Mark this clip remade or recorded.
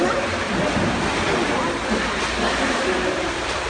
recorded